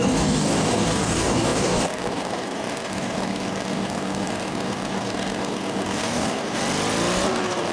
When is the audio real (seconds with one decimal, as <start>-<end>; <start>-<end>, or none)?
6.6-7.3